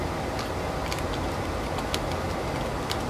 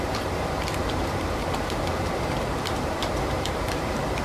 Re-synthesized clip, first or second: second